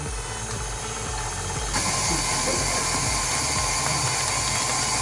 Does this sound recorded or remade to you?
recorded